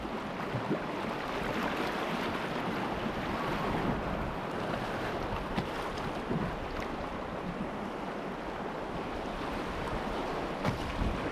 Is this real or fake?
real